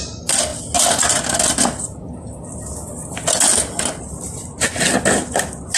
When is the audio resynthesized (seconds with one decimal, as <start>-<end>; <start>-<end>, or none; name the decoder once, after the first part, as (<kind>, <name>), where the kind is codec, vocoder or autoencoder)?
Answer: none